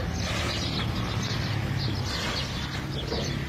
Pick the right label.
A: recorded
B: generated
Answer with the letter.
A